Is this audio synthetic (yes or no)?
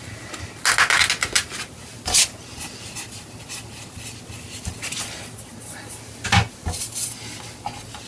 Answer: no